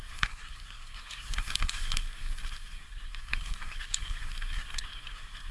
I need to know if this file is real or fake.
fake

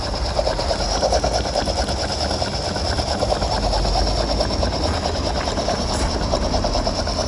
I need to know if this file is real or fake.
real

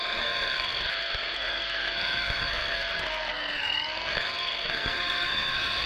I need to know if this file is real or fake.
fake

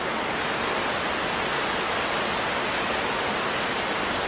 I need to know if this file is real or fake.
real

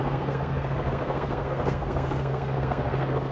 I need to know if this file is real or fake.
fake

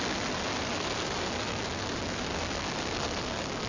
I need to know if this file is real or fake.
real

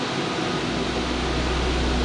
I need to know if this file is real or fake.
real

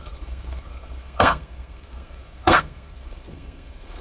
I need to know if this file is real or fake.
fake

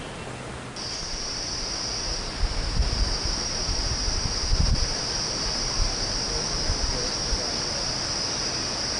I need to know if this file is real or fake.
real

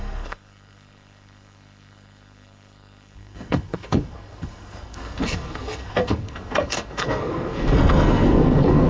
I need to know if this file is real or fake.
fake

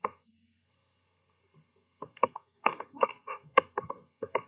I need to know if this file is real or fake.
fake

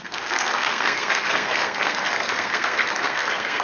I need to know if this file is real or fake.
fake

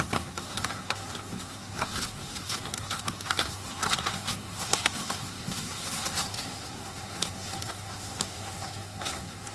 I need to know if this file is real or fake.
fake